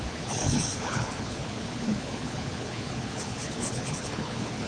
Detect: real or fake fake